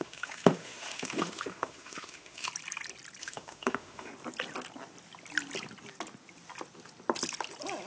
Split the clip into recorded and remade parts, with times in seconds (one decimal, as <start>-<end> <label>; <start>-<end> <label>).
0.0-2.5 remade; 2.5-3.2 recorded; 3.2-4.1 remade; 4.1-7.9 recorded